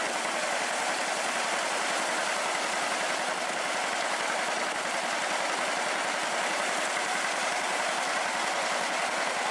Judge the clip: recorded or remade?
recorded